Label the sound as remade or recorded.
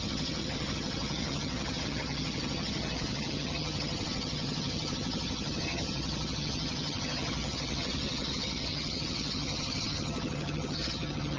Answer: remade